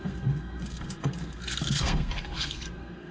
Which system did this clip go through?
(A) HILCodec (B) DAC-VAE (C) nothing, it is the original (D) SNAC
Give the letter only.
D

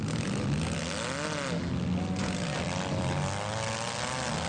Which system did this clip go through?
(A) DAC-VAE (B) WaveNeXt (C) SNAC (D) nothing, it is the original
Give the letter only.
D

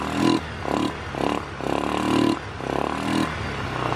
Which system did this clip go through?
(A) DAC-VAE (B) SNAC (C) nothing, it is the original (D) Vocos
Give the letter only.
C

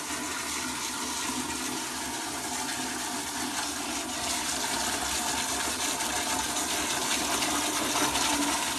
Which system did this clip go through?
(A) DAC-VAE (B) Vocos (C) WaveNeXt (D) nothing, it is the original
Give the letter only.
D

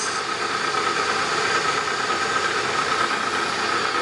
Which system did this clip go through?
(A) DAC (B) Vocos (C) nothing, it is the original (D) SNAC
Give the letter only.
C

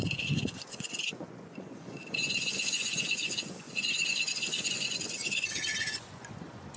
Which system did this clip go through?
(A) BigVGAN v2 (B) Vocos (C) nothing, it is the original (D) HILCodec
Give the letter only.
B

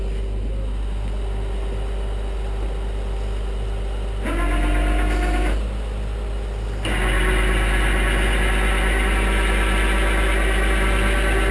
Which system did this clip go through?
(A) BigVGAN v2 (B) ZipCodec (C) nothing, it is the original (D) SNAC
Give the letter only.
C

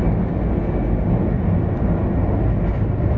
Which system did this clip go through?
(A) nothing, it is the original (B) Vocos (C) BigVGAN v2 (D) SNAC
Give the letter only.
A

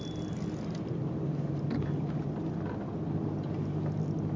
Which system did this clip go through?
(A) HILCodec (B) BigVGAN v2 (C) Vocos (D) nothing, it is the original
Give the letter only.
D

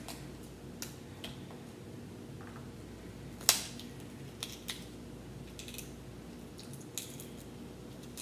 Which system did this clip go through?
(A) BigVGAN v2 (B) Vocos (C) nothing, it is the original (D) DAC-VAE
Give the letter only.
C